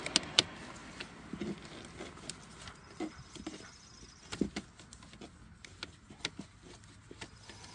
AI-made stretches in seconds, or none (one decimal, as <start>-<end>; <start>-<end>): none